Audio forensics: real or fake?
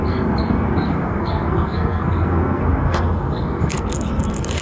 fake